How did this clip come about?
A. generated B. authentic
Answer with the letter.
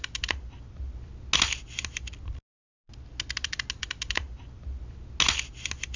B